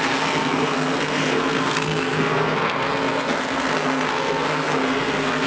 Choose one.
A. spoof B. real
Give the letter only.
A